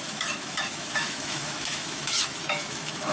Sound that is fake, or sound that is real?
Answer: fake